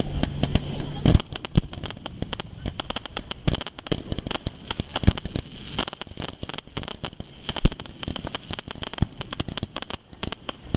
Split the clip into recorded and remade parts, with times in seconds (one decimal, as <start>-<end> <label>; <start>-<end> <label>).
0.0-10.8 recorded